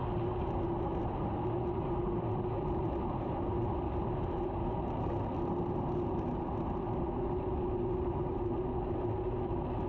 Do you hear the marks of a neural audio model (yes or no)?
no